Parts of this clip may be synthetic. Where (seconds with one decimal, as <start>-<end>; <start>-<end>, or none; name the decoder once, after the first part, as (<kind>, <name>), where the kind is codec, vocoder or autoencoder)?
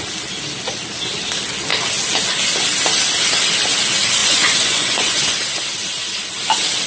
4.2-5.3 (vocoder, Vocos)